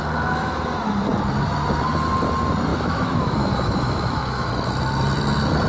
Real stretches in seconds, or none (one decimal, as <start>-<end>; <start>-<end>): 0.0-2.7; 4.5-5.7